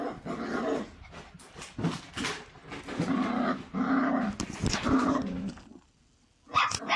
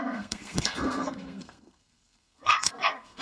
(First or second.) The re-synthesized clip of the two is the second